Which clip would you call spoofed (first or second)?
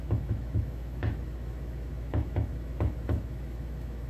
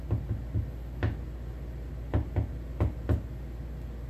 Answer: first